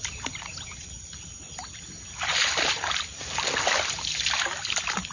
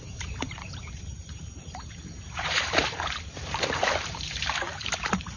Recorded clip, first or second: first